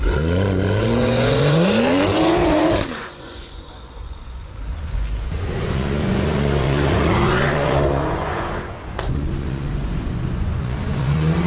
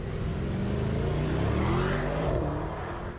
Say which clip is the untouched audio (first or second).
second